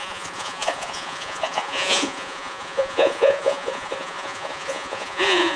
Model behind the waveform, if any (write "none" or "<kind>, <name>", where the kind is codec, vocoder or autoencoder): vocoder, Vocos